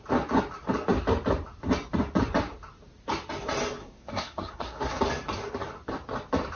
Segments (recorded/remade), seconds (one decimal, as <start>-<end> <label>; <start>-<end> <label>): 0.0-3.8 recorded; 3.8-5.0 remade; 5.0-6.6 recorded